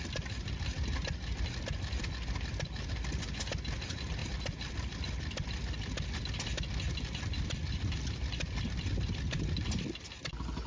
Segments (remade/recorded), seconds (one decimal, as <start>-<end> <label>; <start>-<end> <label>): 0.0-10.7 recorded